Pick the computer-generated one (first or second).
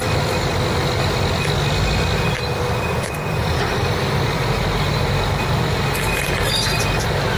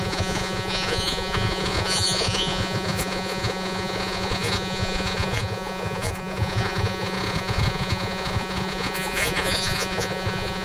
second